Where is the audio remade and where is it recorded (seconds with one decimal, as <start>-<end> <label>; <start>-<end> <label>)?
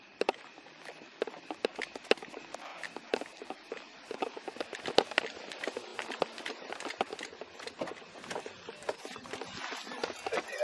0.0-10.6 recorded